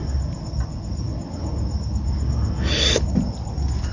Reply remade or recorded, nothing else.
recorded